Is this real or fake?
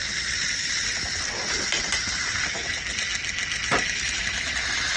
real